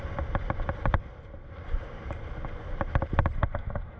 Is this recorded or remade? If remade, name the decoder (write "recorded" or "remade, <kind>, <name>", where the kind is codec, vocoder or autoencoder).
remade, vocoder, BigVGAN v2